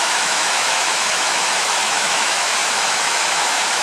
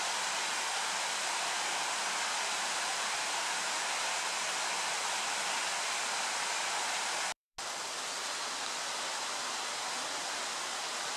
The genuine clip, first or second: second